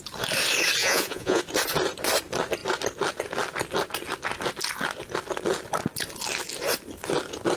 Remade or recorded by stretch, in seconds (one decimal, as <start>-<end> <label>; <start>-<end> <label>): 0.0-0.8 recorded; 0.8-1.4 remade; 1.4-7.6 recorded